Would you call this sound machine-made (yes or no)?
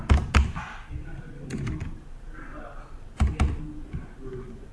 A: no